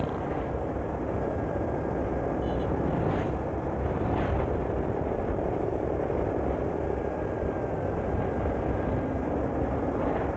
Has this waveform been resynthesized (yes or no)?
yes